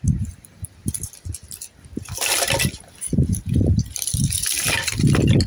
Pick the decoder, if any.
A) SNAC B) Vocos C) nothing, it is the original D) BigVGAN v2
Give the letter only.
D